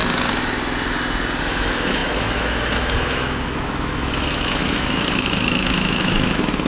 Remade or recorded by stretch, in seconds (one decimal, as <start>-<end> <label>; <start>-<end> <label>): 0.0-1.4 recorded; 1.4-6.7 remade